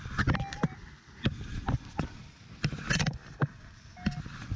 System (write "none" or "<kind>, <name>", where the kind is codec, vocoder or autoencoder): none